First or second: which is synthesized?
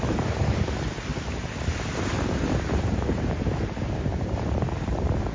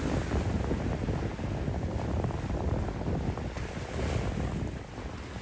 first